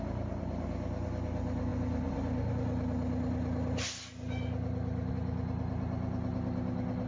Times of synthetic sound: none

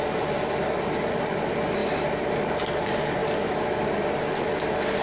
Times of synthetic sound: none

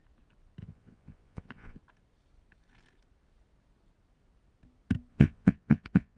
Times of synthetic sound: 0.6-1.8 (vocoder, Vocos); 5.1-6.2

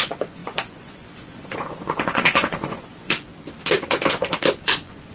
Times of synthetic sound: 0.0-3.3 (vocoder, Vocos); 4.1-5.1

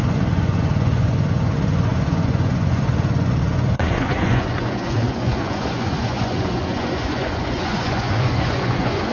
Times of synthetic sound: 0.0-9.1 (vocoder, Vocos)

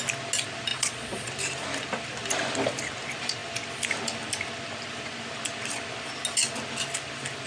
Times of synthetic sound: 0.7-1.3 (vocoder, Vocos)

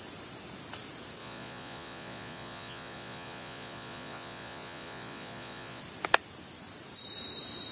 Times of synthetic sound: 1.2-5.8 (vocoder, Vocos)

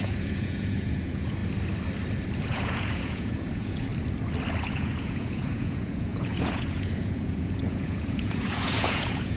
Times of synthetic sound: 0.0-1.4 (vocoder, Vocos); 2.4-3.9; 4.6-9.4